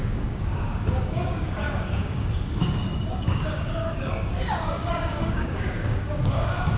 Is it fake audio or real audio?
fake